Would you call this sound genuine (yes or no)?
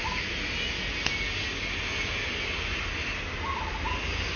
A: yes